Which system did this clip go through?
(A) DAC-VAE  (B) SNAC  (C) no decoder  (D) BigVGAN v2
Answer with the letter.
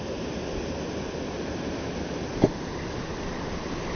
C